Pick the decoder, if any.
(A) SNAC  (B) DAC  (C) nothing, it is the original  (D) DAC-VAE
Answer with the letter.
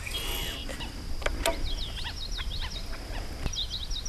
C